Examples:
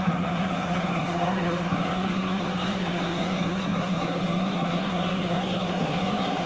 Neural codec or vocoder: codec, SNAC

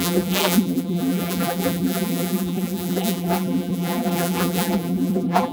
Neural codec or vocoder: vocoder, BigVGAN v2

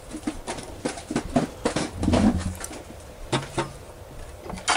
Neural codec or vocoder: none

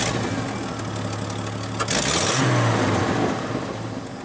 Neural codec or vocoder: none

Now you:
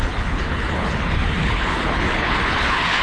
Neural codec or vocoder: codec, HILCodec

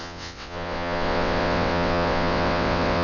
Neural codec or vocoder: vocoder, WaveNeXt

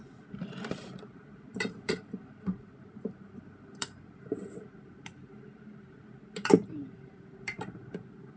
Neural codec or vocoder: vocoder, BigVGAN v2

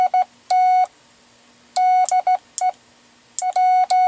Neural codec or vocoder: none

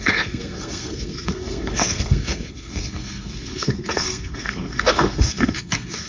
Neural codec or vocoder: codec, SNAC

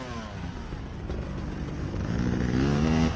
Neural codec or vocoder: none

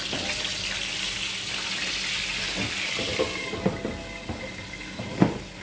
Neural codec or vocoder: none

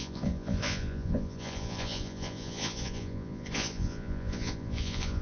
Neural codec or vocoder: vocoder, Vocos